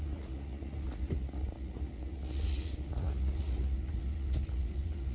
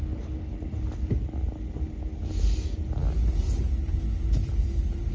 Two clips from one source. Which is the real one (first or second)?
second